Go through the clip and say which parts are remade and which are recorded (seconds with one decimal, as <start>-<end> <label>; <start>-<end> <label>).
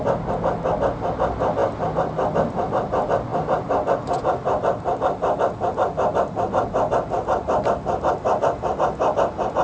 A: 0.0-9.6 recorded